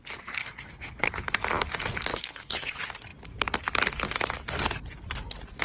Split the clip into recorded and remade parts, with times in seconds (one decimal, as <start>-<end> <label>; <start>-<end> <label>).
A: 0.0-0.4 recorded; 0.4-1.1 remade; 1.1-2.1 recorded; 2.1-2.7 remade; 2.7-5.6 recorded